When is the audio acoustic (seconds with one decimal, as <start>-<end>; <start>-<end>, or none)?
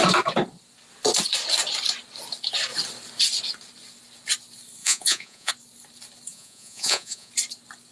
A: 0.0-4.8; 5.5-6.3; 7.3-7.9